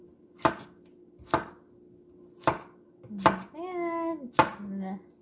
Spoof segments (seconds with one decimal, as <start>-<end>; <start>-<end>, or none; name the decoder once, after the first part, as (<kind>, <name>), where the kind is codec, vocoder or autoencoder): none